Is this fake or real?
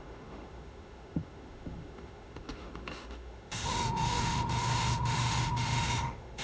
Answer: fake